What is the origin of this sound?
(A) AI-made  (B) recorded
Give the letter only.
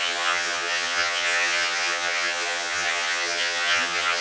A